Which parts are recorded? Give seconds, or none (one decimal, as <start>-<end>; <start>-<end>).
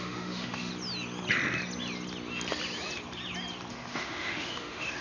0.7-3.7